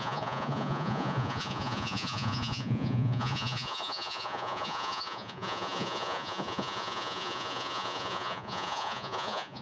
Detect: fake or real fake